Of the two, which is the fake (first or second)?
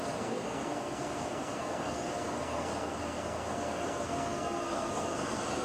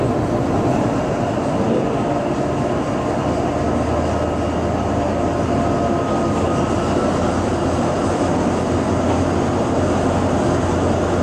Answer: first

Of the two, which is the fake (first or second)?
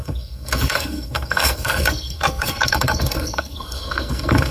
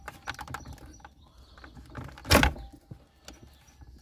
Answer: first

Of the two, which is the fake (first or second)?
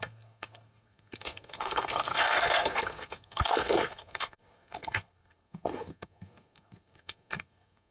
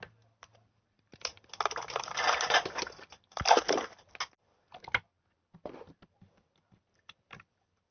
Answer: first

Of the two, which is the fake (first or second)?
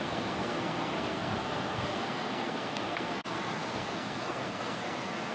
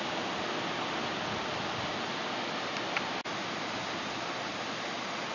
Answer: first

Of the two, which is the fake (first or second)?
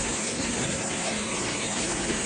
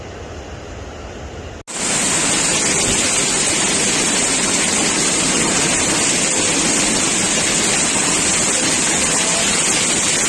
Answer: first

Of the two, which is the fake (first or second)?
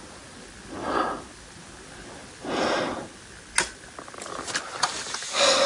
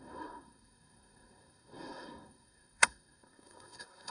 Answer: second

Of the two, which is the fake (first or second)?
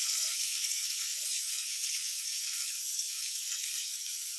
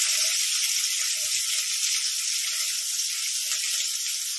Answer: first